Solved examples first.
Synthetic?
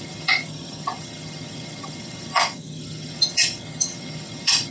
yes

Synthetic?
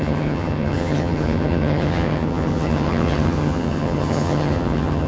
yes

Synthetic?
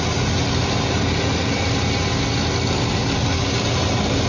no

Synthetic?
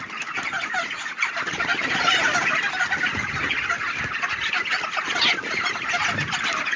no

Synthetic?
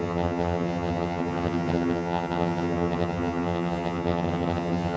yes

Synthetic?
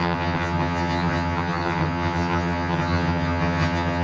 yes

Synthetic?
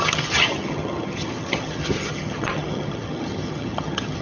yes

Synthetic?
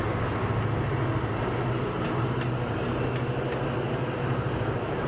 no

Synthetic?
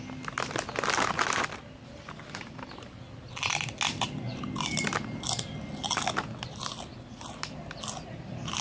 no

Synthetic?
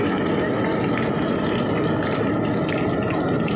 no